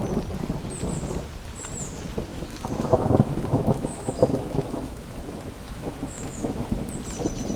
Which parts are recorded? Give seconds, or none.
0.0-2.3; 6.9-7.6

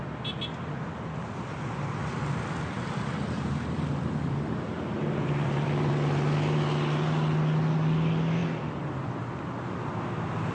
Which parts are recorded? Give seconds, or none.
0.0-2.0; 5.9-10.5

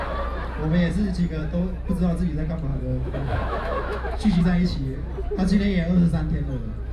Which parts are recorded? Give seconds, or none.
0.0-2.7; 4.4-6.9